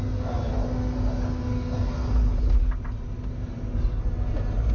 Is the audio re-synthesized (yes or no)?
no